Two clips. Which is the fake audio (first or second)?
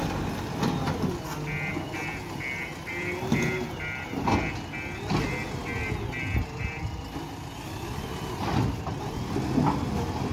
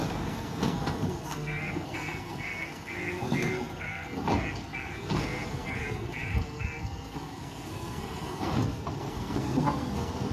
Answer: second